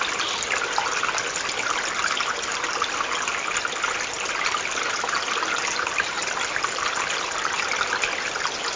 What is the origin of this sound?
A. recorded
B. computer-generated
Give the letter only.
A